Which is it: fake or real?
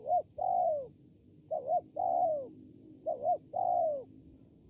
real